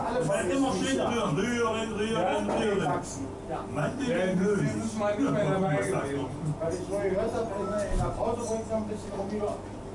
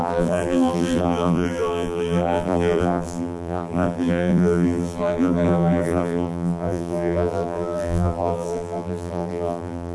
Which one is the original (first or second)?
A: first